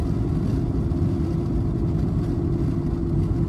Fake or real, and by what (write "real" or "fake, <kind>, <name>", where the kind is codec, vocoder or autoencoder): real